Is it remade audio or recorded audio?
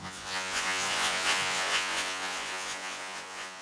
remade